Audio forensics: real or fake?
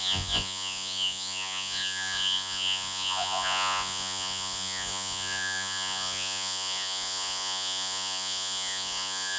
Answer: fake